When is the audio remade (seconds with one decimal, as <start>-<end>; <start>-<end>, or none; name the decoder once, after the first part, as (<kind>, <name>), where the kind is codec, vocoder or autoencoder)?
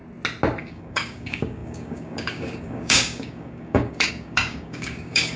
0.6-5.4 (codec, DAC)